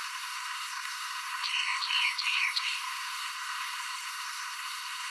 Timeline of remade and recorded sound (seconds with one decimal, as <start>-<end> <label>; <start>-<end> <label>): 0.0-5.1 remade